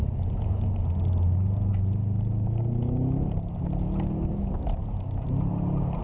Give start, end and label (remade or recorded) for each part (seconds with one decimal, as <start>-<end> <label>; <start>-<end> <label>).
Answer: 0.0-6.0 recorded